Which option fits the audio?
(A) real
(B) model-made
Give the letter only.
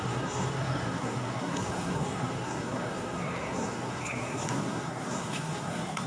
B